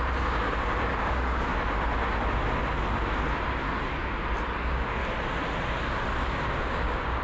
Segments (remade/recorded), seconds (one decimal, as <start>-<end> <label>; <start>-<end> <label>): 0.0-1.5 remade; 1.5-4.6 recorded; 4.6-5.0 remade; 5.0-6.3 recorded; 6.3-7.2 remade